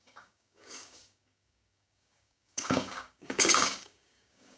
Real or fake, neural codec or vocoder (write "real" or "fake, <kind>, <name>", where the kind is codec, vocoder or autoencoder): fake, codec, DAC